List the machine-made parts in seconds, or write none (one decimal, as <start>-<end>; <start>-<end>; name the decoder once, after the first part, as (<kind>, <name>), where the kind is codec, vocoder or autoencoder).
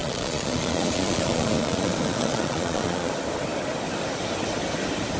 0.0-3.1 (vocoder, Vocos)